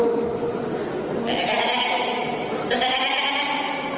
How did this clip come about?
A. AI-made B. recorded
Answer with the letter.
B